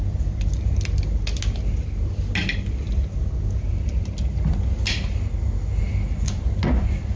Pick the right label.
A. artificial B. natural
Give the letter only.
B